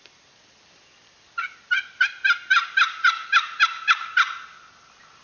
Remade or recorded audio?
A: recorded